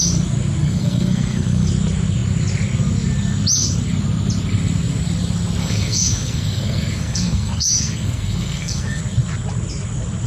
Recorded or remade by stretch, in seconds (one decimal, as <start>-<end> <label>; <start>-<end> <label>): 0.0-0.6 recorded; 0.6-1.7 remade; 1.7-5.6 recorded; 5.6-9.0 remade; 9.0-10.3 recorded